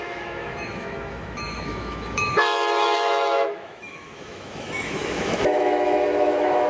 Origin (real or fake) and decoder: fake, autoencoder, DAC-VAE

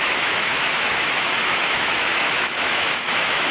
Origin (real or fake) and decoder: fake, autoencoder, DAC-VAE